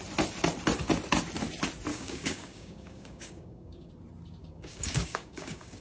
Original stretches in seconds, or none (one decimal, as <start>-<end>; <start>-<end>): 0.0-1.9; 3.9-4.4